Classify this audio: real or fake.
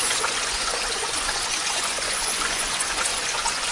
fake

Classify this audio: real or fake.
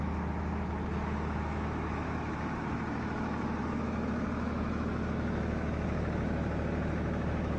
fake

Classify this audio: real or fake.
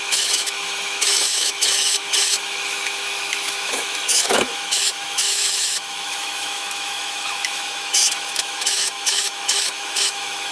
fake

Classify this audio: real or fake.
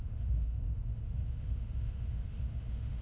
fake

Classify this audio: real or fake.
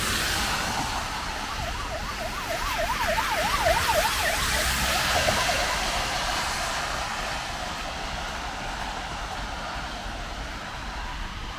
real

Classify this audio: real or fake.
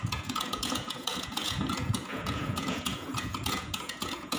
fake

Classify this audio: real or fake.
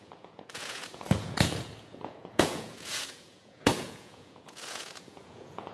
fake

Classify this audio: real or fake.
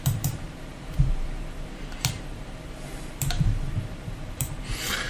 fake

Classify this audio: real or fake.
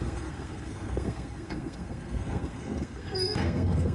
fake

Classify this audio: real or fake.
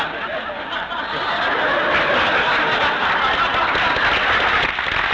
real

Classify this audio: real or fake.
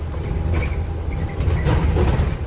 real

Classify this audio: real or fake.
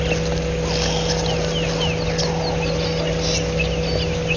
real